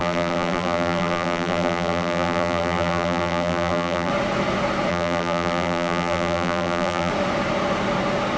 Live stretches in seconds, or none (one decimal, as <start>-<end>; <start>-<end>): 4.1-4.9; 7.1-8.4